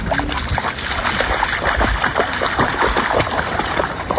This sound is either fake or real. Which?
real